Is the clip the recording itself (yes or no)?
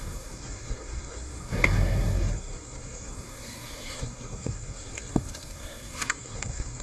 no